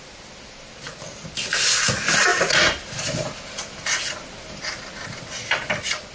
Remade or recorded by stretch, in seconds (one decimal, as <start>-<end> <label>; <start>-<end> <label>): 0.0-6.1 recorded

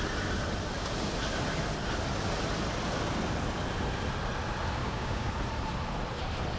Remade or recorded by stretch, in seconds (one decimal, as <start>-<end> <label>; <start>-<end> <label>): 0.0-4.8 recorded; 4.8-5.3 remade; 5.3-6.6 recorded

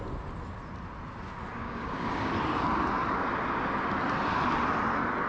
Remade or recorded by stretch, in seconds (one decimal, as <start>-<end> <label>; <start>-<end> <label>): 0.0-1.5 recorded; 1.5-2.3 remade; 2.3-5.3 recorded